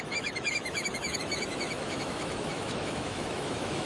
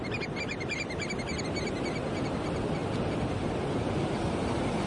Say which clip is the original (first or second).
second